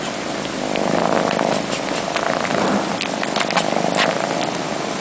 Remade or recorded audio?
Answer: recorded